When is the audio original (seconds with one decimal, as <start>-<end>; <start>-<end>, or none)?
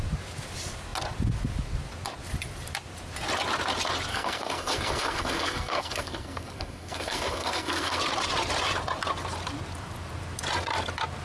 0.0-4.1; 8.0-11.2